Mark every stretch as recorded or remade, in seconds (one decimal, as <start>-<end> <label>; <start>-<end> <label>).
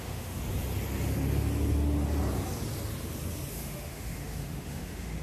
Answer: 0.0-0.4 remade; 0.4-3.5 recorded; 3.5-5.2 remade